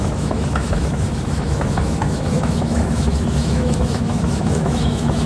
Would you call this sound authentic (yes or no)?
no